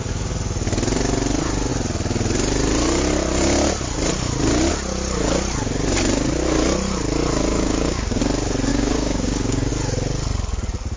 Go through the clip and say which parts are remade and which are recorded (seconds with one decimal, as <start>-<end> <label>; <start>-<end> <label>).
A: 0.0-7.5 recorded; 7.5-8.2 remade; 8.2-8.7 recorded; 8.7-9.7 remade; 9.7-11.0 recorded